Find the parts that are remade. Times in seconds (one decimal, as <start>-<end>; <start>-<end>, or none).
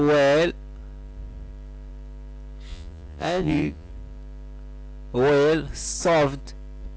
2.7-3.9